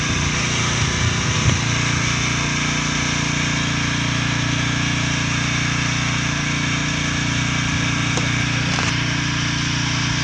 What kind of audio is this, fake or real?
real